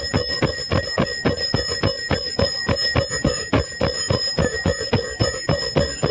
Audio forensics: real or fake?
real